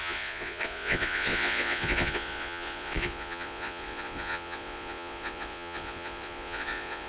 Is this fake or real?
fake